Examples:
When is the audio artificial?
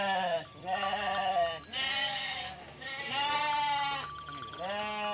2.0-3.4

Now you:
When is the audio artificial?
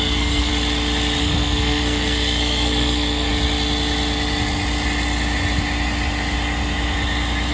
0.0-0.5; 1.2-3.3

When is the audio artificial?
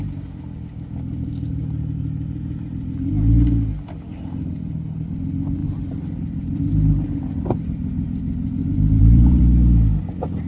5.6-9.4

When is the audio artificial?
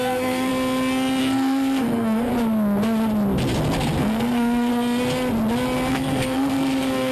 0.0-0.5; 1.2-2.3; 4.0-4.7; 5.9-7.1